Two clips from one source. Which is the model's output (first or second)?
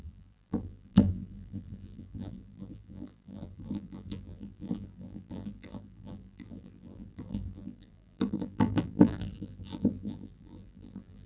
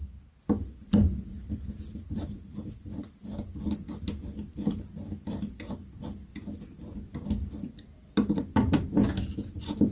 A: first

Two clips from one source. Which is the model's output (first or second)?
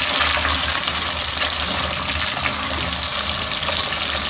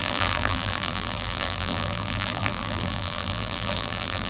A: second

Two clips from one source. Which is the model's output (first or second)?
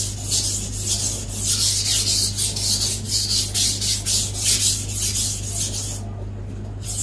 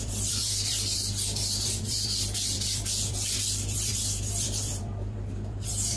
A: second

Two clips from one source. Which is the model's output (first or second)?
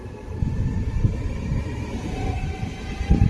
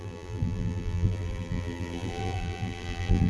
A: second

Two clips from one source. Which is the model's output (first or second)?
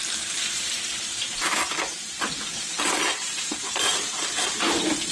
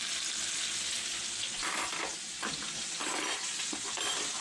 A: first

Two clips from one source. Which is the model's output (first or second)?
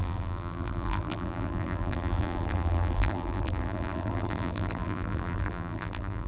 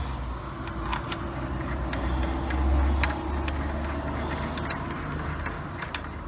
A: first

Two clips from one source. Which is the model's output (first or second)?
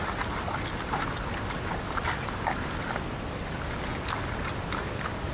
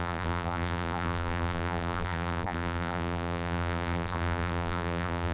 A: second